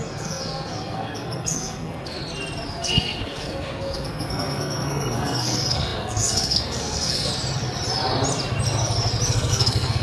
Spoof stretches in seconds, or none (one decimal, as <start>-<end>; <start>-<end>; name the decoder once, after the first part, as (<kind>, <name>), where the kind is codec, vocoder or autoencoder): 0.0-2.2 (codec, SNAC); 2.7-7.3; 9.3-10.0